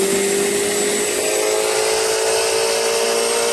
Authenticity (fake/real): real